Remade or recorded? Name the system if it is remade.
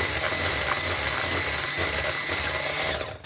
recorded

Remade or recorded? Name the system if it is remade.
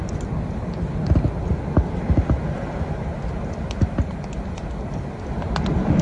recorded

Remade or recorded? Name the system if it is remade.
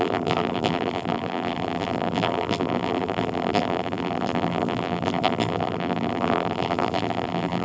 remade, vocoder, BigVGAN v2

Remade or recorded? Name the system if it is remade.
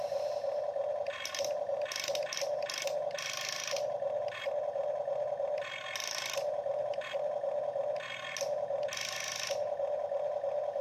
recorded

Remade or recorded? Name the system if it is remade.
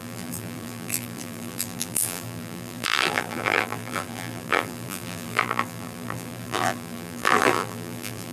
remade, vocoder, BigVGAN v2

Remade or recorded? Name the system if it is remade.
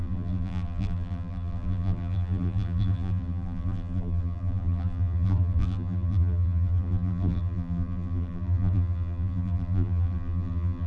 remade, vocoder, BigVGAN v2